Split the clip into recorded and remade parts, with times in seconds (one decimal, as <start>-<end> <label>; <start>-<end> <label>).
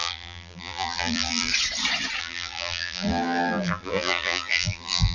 0.0-1.5 remade; 1.5-2.2 recorded; 2.2-5.1 remade